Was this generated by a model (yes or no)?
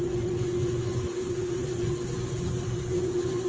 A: yes